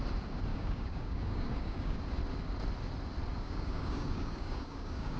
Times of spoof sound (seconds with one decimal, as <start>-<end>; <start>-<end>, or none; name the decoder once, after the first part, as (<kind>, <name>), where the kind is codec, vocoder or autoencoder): 0.5-2.0 (codec, DAC); 3.3-5.2